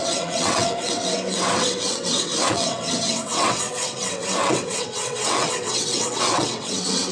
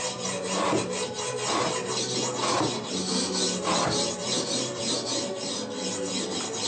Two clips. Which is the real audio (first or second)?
second